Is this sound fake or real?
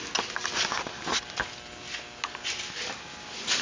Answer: real